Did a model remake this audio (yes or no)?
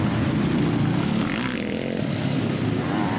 no